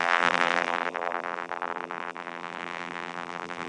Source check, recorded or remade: remade